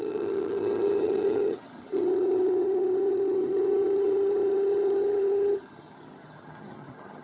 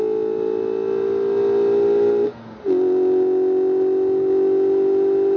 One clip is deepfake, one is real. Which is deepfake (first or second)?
first